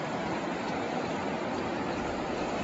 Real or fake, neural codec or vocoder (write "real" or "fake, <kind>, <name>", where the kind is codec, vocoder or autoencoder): real